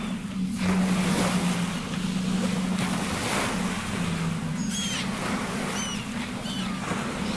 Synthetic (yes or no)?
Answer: no